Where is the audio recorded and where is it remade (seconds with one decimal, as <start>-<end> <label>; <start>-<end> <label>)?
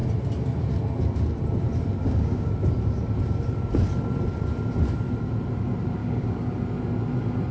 0.0-2.0 recorded; 2.0-2.5 remade; 2.5-6.0 recorded; 6.0-6.5 remade; 6.5-7.5 recorded